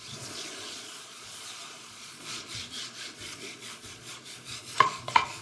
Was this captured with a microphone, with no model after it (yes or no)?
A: no